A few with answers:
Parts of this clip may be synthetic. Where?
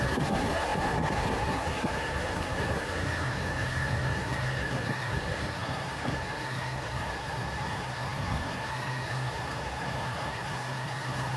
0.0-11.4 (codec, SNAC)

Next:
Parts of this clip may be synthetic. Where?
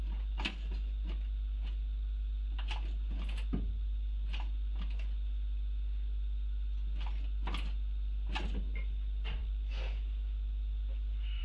none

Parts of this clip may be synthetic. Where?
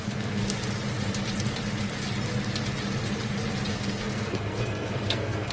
0.0-0.4 (codec, SNAC); 3.7-5.5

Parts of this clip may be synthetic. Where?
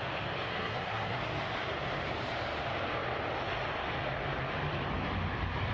0.5-1.2 (codec, SNAC)